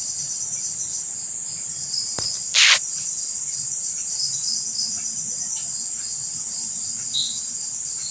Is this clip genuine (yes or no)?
yes